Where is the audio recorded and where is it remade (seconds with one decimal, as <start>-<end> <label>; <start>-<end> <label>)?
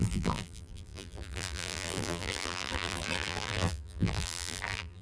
0.0-5.0 remade